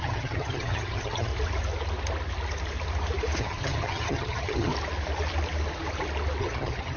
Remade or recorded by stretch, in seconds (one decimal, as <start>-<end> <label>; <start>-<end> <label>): 0.0-1.3 remade; 1.3-3.4 recorded; 3.4-4.7 remade; 4.7-6.4 recorded; 6.4-7.0 remade